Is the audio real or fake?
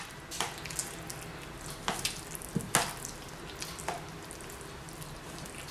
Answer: real